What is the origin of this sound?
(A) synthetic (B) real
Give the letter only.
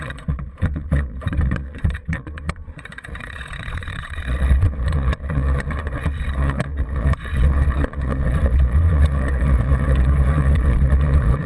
A